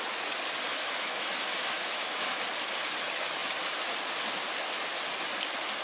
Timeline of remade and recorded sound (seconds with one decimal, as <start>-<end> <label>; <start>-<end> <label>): 0.0-0.7 recorded; 0.7-2.4 remade; 2.4-5.8 recorded